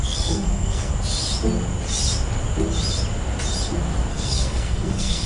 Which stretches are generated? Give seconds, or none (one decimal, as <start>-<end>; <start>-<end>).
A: 0.0-0.9; 4.1-5.3

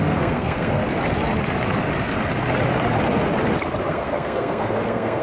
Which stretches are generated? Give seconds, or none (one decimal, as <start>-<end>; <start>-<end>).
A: 0.0-0.8; 3.9-5.2